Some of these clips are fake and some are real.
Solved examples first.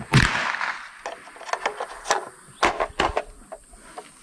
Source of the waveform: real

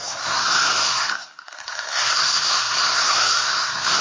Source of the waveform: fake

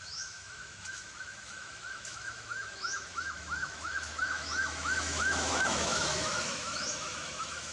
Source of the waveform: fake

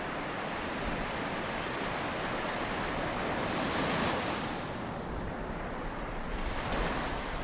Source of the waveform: real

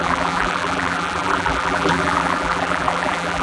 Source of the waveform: fake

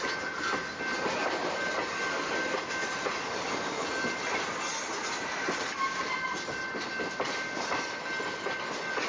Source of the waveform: real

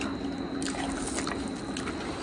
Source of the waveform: real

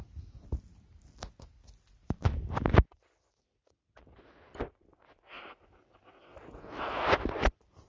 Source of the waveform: real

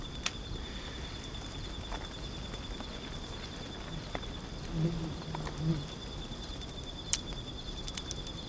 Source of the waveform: real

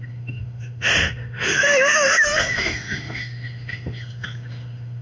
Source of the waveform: fake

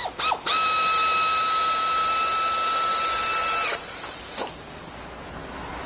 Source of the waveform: real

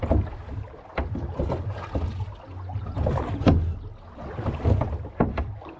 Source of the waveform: real